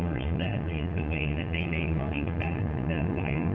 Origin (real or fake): fake